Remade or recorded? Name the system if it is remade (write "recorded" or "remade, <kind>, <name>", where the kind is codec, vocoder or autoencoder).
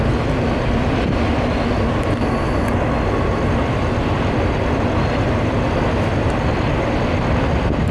recorded